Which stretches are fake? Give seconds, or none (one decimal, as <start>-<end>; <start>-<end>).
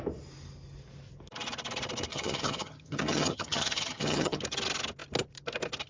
2.1-4.4